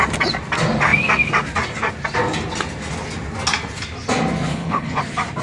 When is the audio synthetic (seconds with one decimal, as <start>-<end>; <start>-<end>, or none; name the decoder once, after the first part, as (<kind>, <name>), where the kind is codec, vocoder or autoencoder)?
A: 4.5-5.0 (codec, HILCodec)